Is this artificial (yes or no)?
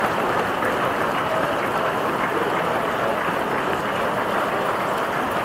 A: no